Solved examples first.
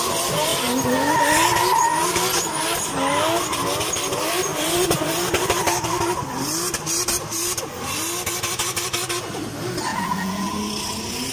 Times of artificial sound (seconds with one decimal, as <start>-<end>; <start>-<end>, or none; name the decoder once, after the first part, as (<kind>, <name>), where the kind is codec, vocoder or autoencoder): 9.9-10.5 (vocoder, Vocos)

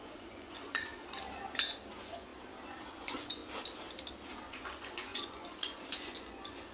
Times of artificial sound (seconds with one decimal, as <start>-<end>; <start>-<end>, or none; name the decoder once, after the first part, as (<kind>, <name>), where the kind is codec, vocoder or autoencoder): 0.0-0.9 (vocoder, Vocos); 1.9-2.3; 2.9-3.4; 4.4-6.7

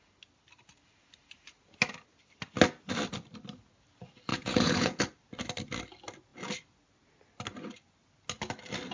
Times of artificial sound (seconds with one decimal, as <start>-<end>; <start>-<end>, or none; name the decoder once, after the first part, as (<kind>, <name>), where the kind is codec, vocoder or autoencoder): 4.3-5.0 (vocoder, Vocos)

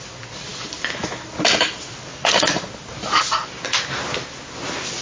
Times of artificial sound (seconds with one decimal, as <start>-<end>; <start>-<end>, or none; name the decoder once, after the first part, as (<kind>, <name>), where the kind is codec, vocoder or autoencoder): 2.1-2.7 (vocoder, Vocos)

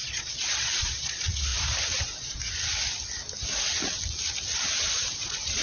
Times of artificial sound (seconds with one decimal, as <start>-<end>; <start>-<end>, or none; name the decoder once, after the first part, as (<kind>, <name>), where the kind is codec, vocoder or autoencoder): 0.0-1.5 (vocoder, Vocos); 2.0-2.4; 4.9-5.6